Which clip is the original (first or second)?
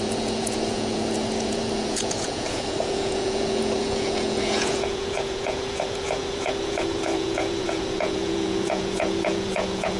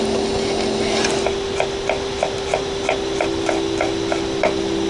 second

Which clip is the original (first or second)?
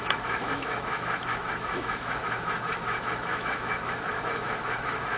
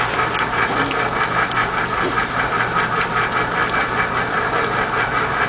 second